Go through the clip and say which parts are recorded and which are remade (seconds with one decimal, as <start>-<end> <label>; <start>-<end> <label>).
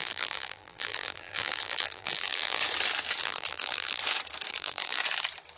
0.0-2.6 remade; 2.6-3.2 recorded; 3.2-4.0 remade; 4.0-4.5 recorded; 4.5-5.0 remade; 5.0-5.6 recorded